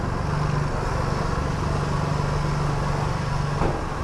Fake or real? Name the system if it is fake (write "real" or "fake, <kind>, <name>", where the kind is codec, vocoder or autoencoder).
real